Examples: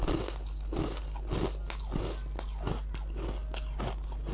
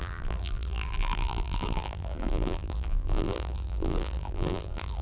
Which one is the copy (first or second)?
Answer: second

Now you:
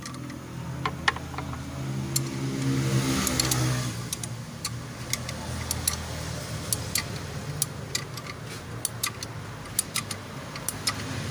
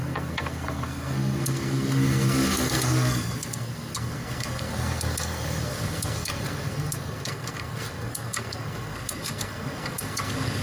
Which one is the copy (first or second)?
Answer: second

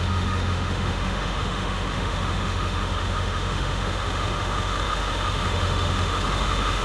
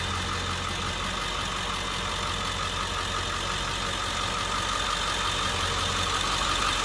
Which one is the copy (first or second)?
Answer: first